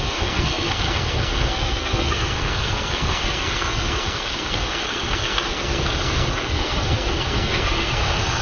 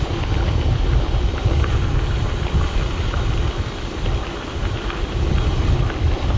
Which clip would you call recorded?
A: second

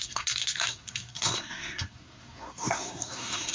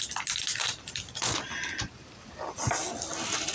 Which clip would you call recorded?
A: second